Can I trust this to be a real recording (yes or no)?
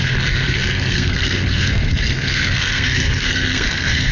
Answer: no